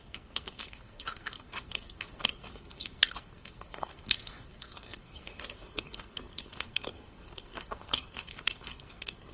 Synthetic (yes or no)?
yes